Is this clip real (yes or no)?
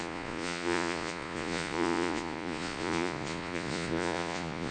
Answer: no